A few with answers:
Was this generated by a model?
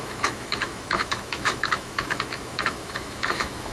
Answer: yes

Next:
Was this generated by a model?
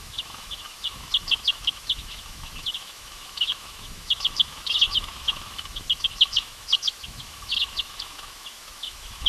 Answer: yes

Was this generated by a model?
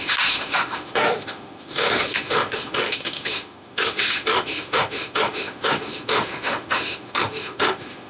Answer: yes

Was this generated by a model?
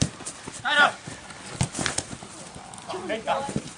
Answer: no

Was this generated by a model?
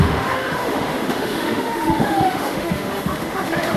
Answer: yes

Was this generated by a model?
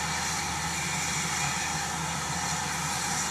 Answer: no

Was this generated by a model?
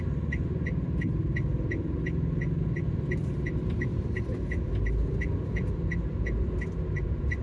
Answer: no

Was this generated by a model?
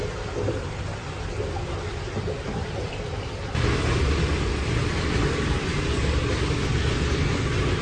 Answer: no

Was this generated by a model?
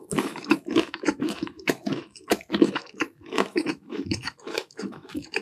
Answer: yes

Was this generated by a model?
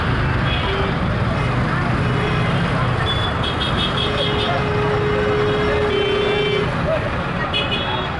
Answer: no